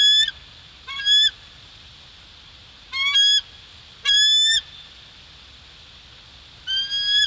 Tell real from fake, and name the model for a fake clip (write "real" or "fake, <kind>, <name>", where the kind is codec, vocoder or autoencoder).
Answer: real